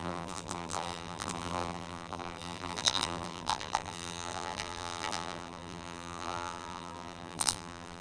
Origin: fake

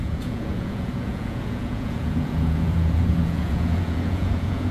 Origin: fake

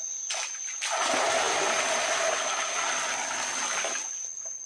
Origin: real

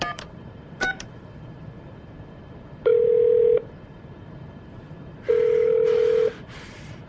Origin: fake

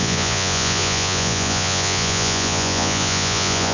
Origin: fake